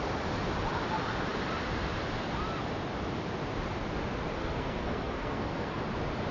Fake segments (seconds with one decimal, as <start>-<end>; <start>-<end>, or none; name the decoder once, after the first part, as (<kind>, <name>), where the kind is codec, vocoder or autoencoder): 4.4-5.8 (codec, SNAC)